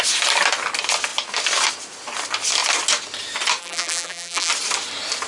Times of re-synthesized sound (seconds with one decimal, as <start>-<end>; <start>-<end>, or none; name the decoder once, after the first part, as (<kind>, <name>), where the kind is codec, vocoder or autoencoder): 3.6-4.5 (vocoder, BigVGAN v2)